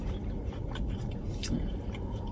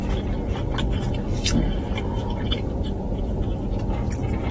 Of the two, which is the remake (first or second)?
first